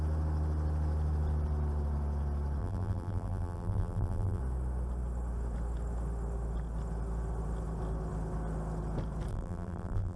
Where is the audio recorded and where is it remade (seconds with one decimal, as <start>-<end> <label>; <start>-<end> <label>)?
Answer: 0.0-2.6 recorded; 2.6-4.4 remade; 4.4-9.3 recorded; 9.3-10.2 remade